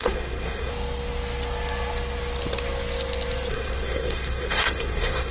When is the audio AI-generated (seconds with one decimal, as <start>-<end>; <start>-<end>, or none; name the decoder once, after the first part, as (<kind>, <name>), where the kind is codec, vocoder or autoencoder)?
0.0-0.7 (codec, SNAC); 3.5-5.3